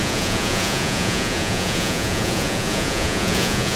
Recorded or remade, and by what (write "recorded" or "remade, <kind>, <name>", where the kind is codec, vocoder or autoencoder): remade, vocoder, Vocos